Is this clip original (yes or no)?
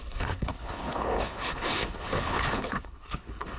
no